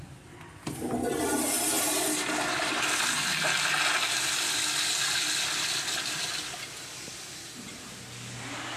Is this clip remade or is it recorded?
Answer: recorded